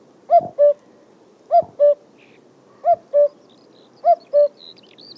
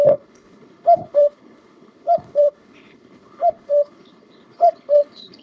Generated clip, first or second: second